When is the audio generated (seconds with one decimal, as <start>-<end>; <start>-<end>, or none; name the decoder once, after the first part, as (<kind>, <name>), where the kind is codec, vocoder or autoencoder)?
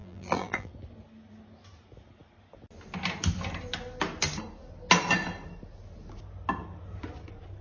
0.0-0.7 (vocoder, BigVGAN v2)